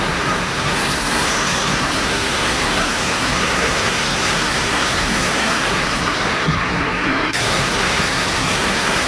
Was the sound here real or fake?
fake